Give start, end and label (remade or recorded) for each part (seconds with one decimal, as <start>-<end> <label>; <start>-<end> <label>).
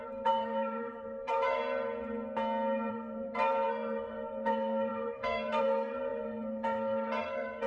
0.0-1.6 remade; 1.6-2.9 recorded; 2.9-7.7 remade